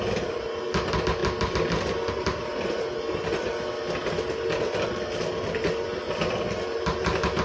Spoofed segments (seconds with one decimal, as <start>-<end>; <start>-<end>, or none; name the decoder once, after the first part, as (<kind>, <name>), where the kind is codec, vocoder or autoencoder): none